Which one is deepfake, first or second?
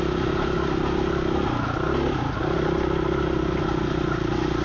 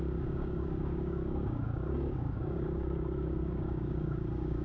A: second